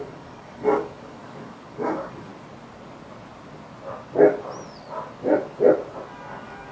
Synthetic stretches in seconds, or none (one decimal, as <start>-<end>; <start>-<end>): 0.0-2.3; 6.3-6.7

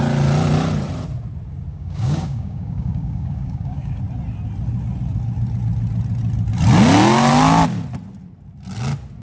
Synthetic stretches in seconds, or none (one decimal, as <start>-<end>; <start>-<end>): 1.7-4.0

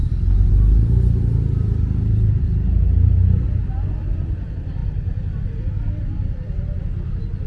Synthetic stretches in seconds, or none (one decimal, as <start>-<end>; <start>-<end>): none

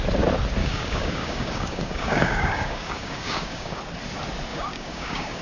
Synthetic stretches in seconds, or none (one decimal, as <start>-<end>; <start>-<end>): 0.6-3.8; 4.5-5.4

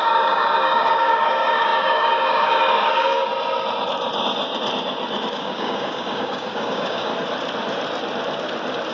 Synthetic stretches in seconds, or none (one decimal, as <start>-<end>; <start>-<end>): 0.0-3.3; 5.3-7.1

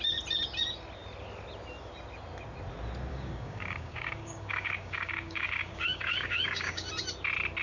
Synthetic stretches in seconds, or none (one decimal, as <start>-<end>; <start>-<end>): 3.1-6.9

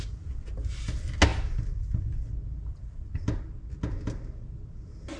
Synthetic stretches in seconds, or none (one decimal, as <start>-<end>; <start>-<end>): none

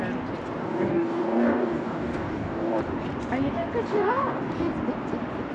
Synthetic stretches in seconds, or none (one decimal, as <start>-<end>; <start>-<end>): 0.6-2.8; 3.9-4.5